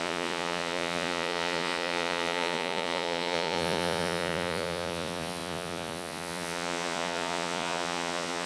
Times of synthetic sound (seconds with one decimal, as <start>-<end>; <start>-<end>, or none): 0.0-8.5